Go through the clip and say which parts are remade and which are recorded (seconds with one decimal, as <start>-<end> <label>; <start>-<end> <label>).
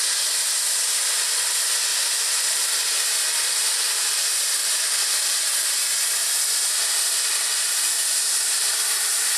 0.0-9.4 recorded